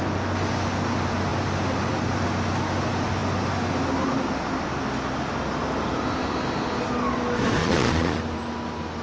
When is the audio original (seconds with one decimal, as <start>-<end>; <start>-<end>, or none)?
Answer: 0.0-7.6; 8.2-9.0